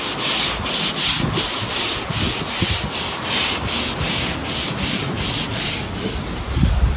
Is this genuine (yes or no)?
yes